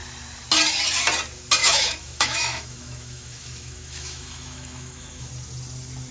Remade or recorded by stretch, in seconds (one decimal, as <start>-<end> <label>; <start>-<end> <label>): 0.0-1.6 recorded; 1.6-5.3 remade; 5.3-6.1 recorded